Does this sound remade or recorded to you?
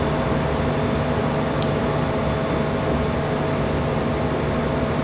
recorded